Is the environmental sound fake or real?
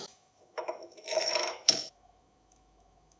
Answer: fake